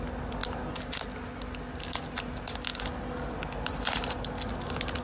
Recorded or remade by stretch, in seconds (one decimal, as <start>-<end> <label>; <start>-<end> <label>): 0.0-5.0 recorded